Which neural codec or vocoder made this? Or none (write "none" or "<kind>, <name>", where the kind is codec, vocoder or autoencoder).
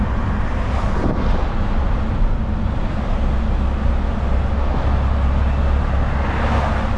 none